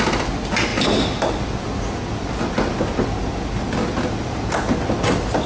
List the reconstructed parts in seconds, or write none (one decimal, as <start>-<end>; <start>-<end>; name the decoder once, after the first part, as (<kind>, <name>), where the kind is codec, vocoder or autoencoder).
none